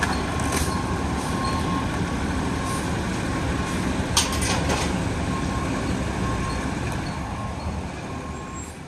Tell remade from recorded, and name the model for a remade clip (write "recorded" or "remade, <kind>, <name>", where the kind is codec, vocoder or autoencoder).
recorded